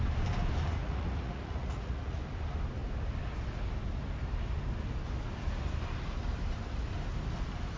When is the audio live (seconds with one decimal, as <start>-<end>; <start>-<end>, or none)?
0.0-0.8; 2.2-7.8